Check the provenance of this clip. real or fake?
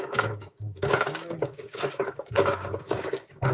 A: fake